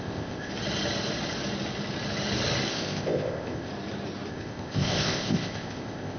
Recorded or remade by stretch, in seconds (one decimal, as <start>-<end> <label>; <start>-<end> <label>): 0.0-0.5 remade; 0.5-2.7 recorded; 2.7-3.7 remade; 3.7-4.3 recorded; 4.3-6.2 remade